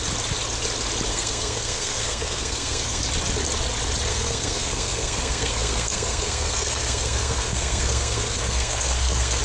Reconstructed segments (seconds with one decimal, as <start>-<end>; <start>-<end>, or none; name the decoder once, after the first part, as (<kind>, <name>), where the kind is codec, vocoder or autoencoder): 1.1-3.0 (codec, SNAC); 4.1-9.4